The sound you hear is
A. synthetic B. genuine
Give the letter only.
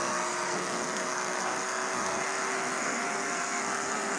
A